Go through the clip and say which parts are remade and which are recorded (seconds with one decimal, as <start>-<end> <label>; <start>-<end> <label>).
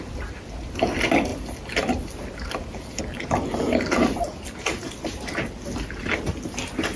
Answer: 0.0-7.0 recorded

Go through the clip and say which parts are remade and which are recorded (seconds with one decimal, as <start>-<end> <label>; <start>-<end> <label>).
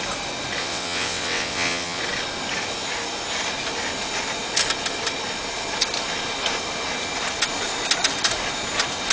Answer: 0.0-0.6 recorded; 0.6-2.0 remade; 2.0-9.1 recorded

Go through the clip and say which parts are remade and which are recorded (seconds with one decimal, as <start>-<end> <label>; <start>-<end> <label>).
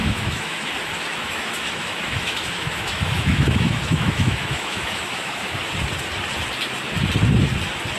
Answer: 0.0-0.7 remade; 0.7-1.1 recorded; 1.1-5.6 remade; 5.6-8.0 recorded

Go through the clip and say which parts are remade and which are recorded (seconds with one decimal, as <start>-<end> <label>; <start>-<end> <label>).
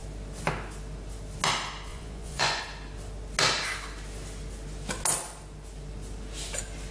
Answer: 0.0-1.9 recorded; 1.9-2.6 remade; 2.6-6.9 recorded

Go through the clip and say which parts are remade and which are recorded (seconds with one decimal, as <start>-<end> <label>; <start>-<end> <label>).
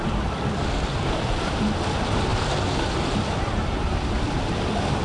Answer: 0.0-5.0 remade